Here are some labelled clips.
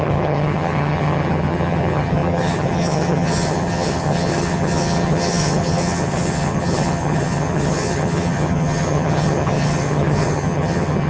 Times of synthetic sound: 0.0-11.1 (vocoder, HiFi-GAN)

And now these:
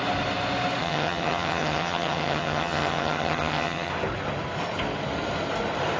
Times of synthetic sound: 0.8-3.9 (vocoder, HiFi-GAN)

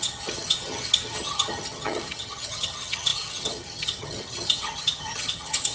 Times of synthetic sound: 0.0-5.7 (vocoder, HiFi-GAN)

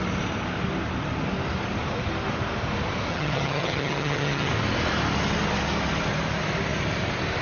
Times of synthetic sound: 3.1-4.5 (vocoder, HiFi-GAN)

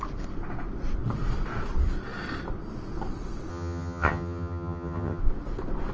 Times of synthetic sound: 3.5-5.2 (vocoder, HiFi-GAN)